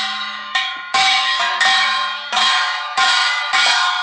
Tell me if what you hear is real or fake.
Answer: fake